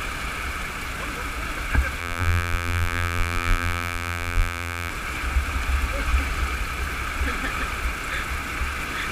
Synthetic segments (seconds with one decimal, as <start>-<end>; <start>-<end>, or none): 2.0-4.9